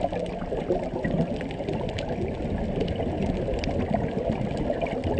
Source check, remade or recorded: recorded